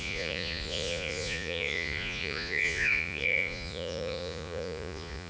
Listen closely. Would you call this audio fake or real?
fake